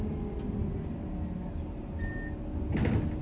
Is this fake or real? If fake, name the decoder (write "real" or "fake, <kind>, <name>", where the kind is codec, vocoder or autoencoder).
real